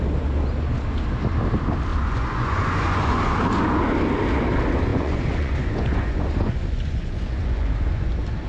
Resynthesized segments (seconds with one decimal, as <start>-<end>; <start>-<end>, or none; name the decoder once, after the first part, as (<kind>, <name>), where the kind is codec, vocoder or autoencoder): 1.9-3.3 (vocoder, Vocos); 4.9-8.1

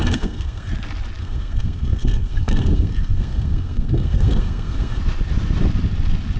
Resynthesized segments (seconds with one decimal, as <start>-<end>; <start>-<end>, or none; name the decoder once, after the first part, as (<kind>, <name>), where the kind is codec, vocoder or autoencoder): 0.0-0.7 (codec, SNAC); 1.2-5.0

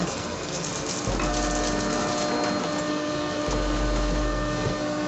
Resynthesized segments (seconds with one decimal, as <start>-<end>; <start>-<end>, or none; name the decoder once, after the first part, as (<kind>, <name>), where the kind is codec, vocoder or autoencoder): 0.0-0.7 (codec, SNAC); 2.9-3.4; 4.2-5.1

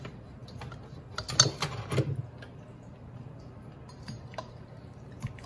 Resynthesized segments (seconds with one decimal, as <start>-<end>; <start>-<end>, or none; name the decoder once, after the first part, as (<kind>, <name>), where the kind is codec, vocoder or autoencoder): none

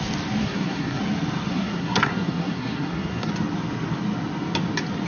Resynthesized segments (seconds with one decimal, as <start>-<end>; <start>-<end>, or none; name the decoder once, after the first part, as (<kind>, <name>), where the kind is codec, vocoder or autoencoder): 0.4-1.0 (codec, SNAC); 1.5-3.3

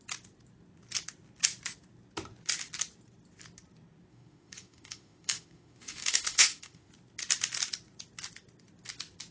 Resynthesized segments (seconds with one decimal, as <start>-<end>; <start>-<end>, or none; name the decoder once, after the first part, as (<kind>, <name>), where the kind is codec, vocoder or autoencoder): 4.1-6.9 (autoencoder, DAC-VAE)